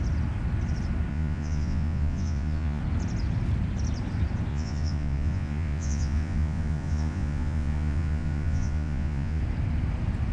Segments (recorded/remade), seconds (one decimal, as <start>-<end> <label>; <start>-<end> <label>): 0.0-1.1 recorded; 1.1-2.8 remade; 2.8-4.5 recorded; 4.5-9.4 remade; 9.4-10.3 recorded